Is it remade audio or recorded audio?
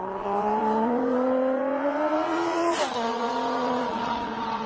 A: remade